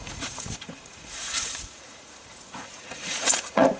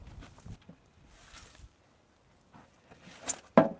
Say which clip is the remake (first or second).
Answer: first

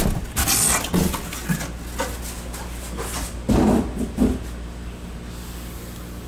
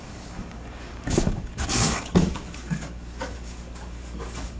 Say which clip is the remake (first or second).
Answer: second